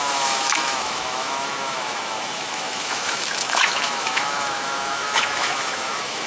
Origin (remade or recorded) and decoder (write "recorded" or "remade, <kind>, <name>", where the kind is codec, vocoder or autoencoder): remade, autoencoder, DAC-VAE